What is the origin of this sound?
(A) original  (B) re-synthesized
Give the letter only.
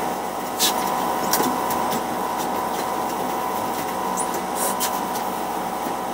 A